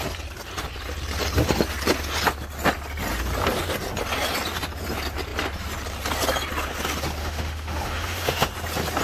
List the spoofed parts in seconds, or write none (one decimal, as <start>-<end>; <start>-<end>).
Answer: 7.2-8.5